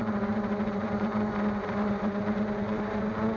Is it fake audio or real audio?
fake